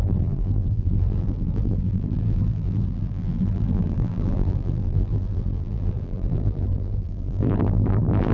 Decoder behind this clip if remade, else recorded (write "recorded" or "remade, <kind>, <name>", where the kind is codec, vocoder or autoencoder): remade, vocoder, BigVGAN v2